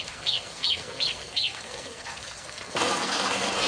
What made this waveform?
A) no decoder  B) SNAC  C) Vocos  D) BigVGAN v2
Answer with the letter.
B